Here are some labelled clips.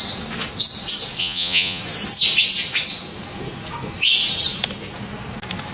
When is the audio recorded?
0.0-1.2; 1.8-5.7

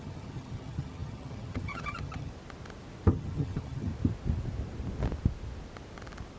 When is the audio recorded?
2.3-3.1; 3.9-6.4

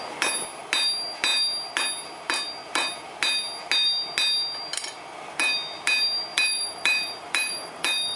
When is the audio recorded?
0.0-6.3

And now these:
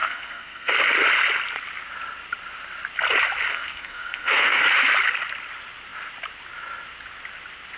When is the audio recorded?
0.7-3.5; 4.6-7.8

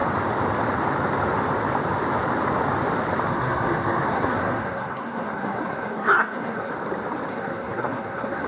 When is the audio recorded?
0.0-3.3; 6.7-7.3

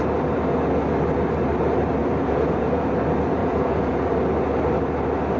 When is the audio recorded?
0.0-2.0; 2.9-3.4; 4.0-5.4